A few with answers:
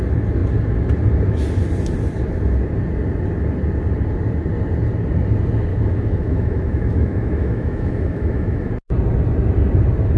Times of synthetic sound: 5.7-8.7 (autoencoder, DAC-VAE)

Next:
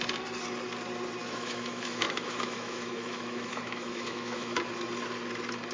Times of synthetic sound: 1.2-4.6 (autoencoder, DAC-VAE)

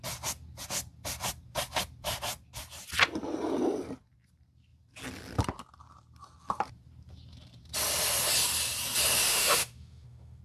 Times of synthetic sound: 9.3-10.4 (autoencoder, DAC-VAE)

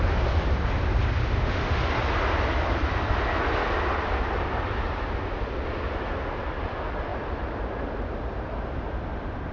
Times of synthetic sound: 1.3-1.8 (autoencoder, DAC-VAE)

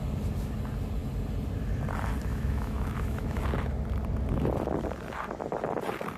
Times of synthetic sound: 2.3-3.4 (autoencoder, DAC-VAE)

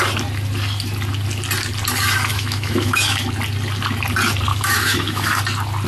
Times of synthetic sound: 2.3-3.2 (autoencoder, DAC-VAE); 4.5-5.4

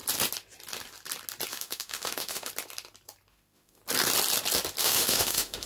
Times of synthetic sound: 1.5-2.5 (autoencoder, DAC-VAE); 3.3-3.8; 4.8-5.7

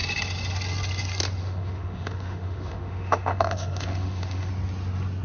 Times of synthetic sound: 1.4-4.5 (autoencoder, DAC-VAE)